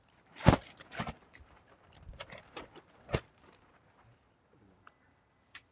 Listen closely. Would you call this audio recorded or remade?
remade